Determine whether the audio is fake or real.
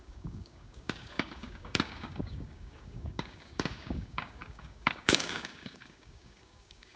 fake